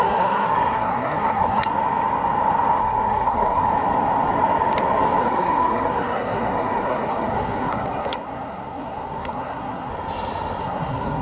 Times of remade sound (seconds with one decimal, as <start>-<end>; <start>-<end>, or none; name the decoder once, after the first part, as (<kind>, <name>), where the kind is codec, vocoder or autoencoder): 0.0-1.7 (codec, SNAC); 2.8-3.7; 5.2-9.9; 10.6-11.2